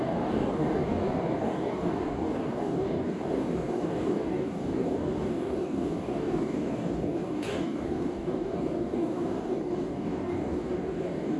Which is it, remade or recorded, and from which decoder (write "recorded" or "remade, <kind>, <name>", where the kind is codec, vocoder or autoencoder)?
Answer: remade, codec, DAC